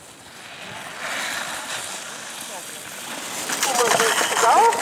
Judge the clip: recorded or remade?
recorded